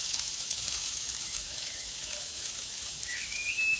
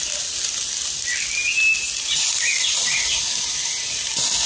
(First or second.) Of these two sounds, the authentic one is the second